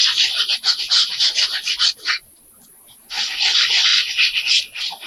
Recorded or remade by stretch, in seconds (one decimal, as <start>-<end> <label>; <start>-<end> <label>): 0.0-5.1 recorded